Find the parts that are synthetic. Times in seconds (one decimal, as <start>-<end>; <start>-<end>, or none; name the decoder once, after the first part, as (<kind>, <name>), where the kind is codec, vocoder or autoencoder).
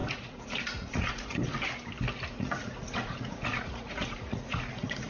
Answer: 0.0-1.4 (vocoder, Vocos); 2.3-5.1